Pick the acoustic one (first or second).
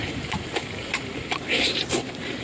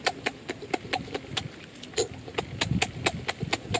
second